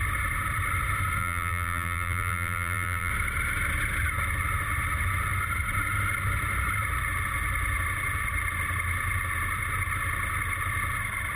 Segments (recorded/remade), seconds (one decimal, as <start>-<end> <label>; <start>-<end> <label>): 0.0-1.2 recorded; 1.2-3.1 remade; 3.1-11.4 recorded